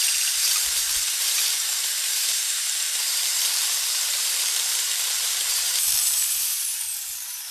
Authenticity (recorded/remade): remade